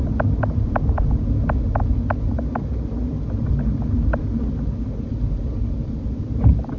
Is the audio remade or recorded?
recorded